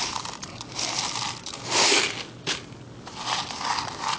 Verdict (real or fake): real